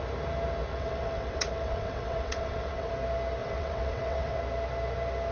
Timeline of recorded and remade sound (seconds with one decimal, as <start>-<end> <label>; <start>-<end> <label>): 0.0-0.7 recorded; 0.7-2.9 remade; 2.9-3.4 recorded; 3.4-4.4 remade; 4.4-5.3 recorded